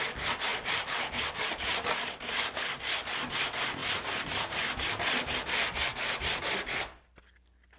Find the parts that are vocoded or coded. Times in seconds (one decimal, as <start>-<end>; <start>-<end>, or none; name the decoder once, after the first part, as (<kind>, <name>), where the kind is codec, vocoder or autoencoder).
0.5-2.4 (vocoder, BigVGAN v2); 3.8-5.4